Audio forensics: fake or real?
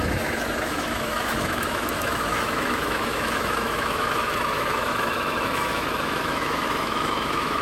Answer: fake